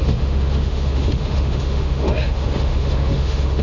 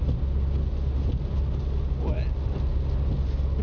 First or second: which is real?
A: second